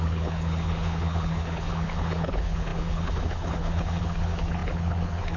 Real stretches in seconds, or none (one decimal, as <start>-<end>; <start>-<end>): none

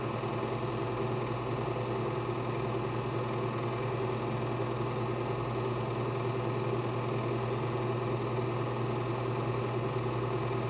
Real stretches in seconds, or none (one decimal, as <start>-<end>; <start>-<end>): 0.0-10.7

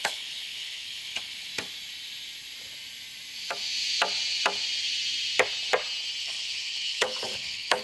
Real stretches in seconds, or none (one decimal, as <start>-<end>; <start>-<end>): 1.5-6.2

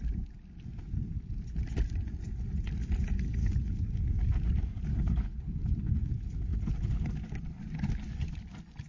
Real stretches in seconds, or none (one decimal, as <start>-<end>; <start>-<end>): 0.0-3.4; 3.9-4.9; 6.1-8.9

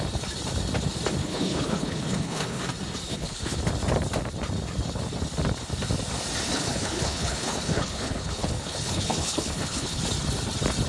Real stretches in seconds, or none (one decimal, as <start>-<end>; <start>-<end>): 0.0-1.2; 2.6-3.1; 3.6-6.5; 10.0-10.9

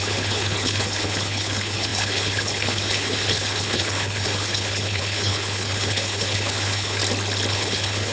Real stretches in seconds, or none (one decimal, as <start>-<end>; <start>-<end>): 7.0-7.5

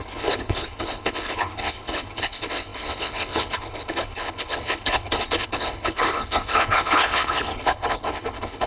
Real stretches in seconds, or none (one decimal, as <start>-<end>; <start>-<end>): none

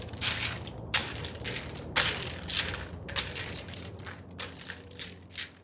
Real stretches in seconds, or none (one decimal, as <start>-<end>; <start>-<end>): 0.0-5.6